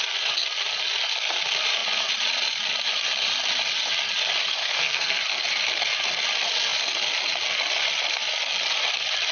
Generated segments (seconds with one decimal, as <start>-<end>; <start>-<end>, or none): 4.6-5.2